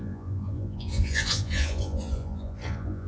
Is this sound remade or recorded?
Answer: remade